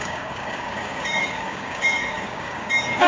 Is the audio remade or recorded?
remade